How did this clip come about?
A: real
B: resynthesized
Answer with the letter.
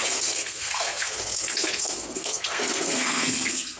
B